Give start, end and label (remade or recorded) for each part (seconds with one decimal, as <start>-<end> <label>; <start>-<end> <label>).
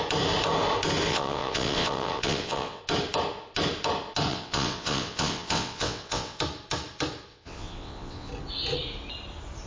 0.0-1.1 recorded; 1.1-2.8 remade; 2.8-4.3 recorded; 4.3-6.4 remade; 6.4-7.3 recorded; 7.3-8.3 remade; 8.3-9.7 recorded